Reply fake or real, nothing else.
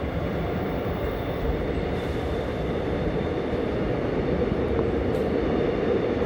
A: fake